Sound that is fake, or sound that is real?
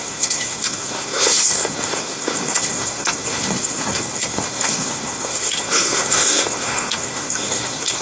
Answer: fake